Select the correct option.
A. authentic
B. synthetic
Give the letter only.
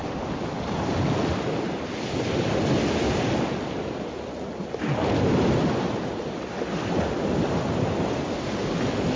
A